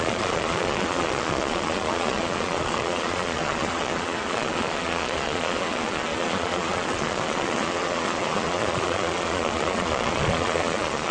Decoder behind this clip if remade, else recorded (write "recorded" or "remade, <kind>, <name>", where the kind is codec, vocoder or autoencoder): remade, vocoder, Vocos